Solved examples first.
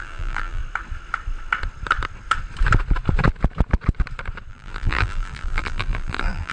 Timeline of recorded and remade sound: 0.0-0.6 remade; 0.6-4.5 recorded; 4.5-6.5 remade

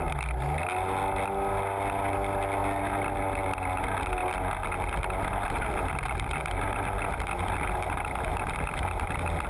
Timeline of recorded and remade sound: 0.0-9.5 recorded

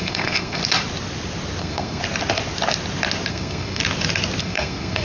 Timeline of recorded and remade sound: 0.0-0.6 remade; 0.6-1.6 recorded; 1.6-2.0 remade; 2.0-3.3 recorded; 3.3-3.8 remade; 3.8-4.4 recorded; 4.4-5.0 remade